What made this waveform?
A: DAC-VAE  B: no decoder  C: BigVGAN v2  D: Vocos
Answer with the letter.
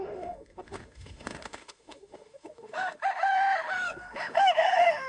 A